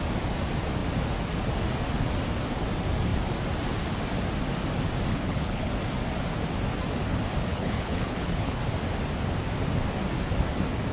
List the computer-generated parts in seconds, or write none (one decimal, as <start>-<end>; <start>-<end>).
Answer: 5.1-5.7; 7.5-8.6